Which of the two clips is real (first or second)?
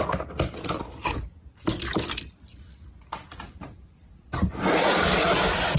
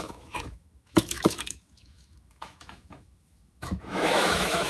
first